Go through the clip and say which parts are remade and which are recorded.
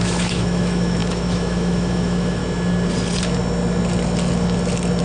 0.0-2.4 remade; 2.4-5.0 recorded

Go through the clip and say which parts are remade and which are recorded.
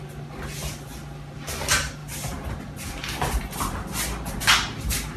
0.0-5.2 recorded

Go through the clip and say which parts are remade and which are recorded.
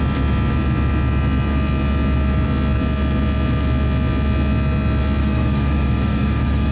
0.0-5.2 recorded; 5.2-6.7 remade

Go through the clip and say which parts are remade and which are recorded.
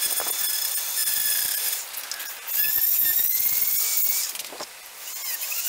0.0-5.7 recorded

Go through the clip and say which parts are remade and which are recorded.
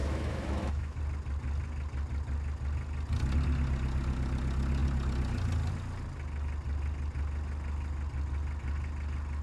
0.0-1.0 remade; 1.0-9.4 recorded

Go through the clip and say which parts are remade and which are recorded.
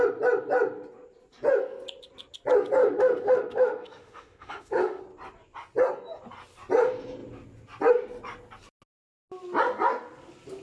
0.0-2.8 recorded; 2.8-5.0 remade; 5.0-10.6 recorded